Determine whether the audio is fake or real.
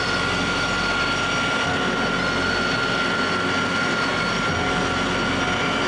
real